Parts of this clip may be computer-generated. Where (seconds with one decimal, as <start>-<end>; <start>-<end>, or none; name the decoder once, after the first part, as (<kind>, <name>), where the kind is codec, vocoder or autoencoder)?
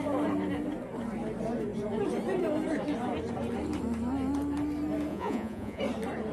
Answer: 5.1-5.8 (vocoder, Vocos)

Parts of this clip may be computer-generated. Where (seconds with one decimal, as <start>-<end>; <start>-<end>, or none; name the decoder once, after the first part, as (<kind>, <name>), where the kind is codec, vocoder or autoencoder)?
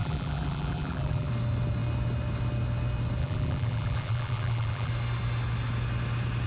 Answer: 0.0-1.3 (vocoder, BigVGAN v2); 3.2-4.9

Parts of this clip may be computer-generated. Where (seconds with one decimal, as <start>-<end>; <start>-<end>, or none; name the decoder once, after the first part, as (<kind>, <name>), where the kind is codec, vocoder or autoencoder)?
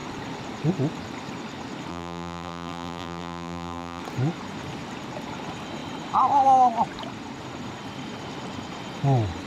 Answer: 1.9-4.0 (vocoder, BigVGAN v2)